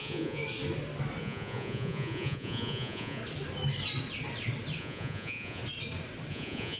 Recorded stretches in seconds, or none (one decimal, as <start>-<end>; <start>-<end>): 0.4-1.2; 3.2-4.8; 5.6-6.3